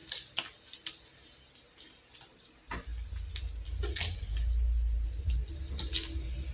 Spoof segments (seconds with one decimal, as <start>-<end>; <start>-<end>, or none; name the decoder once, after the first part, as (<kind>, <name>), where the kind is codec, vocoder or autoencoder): none